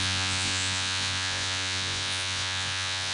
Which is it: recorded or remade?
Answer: remade